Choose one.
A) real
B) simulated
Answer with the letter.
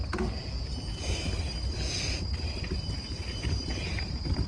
A